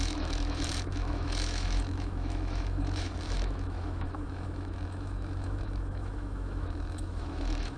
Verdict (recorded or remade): remade